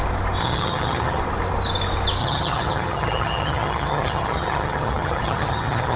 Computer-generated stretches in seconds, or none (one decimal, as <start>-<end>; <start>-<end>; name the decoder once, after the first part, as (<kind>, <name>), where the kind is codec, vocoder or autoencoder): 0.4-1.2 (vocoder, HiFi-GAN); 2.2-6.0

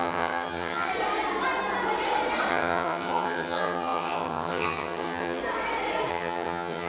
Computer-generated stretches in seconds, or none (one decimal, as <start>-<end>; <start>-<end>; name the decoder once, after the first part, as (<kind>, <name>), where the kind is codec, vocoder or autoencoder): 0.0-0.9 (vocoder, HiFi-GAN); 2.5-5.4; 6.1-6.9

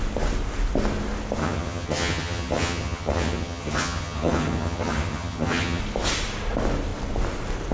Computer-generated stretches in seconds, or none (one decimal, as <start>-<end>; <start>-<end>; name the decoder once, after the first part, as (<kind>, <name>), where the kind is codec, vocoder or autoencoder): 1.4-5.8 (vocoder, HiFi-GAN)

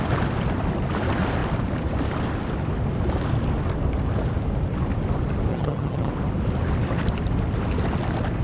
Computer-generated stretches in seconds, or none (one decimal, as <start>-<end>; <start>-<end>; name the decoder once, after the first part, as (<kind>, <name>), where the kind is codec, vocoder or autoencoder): 5.5-6.1 (vocoder, HiFi-GAN)

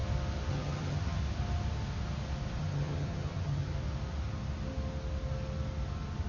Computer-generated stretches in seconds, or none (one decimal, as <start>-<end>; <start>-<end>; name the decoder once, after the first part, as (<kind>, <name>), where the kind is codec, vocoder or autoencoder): 0.5-1.2 (vocoder, HiFi-GAN); 2.6-3.7